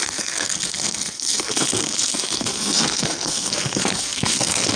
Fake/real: fake